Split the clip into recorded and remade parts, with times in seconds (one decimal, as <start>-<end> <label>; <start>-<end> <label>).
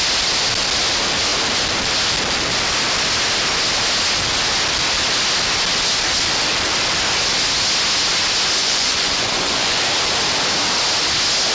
0.0-8.6 recorded; 8.6-9.8 remade; 9.8-11.5 recorded